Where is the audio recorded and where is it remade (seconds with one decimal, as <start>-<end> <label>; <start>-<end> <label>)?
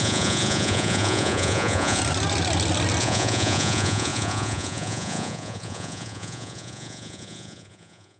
0.0-2.0 remade; 2.0-3.0 recorded; 3.0-8.2 remade